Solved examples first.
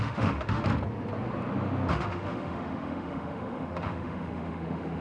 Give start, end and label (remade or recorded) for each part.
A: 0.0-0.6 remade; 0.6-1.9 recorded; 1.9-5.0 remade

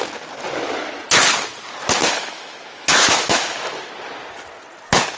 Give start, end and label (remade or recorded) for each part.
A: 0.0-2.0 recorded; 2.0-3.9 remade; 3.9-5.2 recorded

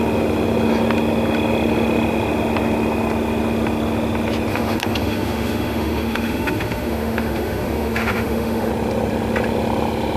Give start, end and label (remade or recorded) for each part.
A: 0.0-4.5 recorded; 4.5-8.7 remade; 8.7-10.2 recorded

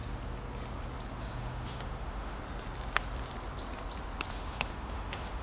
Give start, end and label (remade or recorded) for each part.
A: 0.0-1.2 recorded; 1.2-2.4 remade; 2.4-4.3 recorded; 4.3-5.4 remade

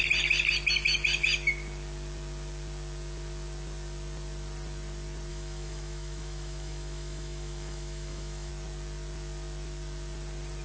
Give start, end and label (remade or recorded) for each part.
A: 0.0-5.3 recorded; 5.3-8.5 remade; 8.5-10.6 recorded

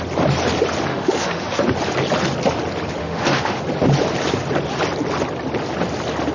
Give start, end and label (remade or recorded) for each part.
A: 0.0-0.9 recorded; 0.9-1.6 remade; 1.6-3.0 recorded; 3.0-3.6 remade; 3.6-6.3 recorded

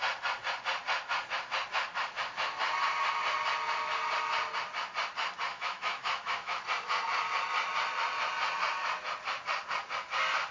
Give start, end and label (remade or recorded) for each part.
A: 0.0-5.5 recorded; 5.5-6.6 remade; 6.6-10.5 recorded